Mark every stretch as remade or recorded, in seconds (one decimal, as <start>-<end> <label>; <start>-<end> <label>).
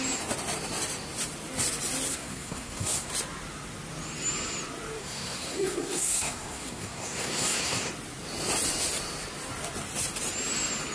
0.0-2.1 recorded; 2.1-3.1 remade; 3.1-5.0 recorded; 5.0-7.9 remade; 7.9-10.9 recorded